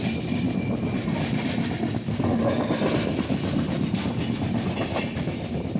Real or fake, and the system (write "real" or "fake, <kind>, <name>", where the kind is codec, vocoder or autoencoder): real